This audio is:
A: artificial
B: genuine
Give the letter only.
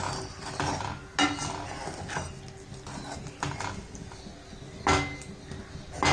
B